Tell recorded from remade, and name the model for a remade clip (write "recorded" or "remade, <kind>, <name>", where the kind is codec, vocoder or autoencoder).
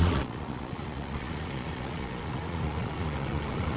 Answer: remade, vocoder, Vocos